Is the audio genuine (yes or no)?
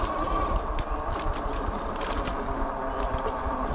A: no